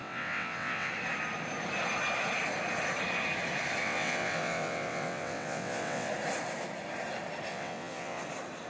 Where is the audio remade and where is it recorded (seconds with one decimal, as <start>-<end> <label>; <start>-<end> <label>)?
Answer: 0.0-0.9 remade; 0.9-3.8 recorded; 3.8-6.1 remade; 6.1-7.5 recorded; 7.5-8.2 remade; 8.2-8.7 recorded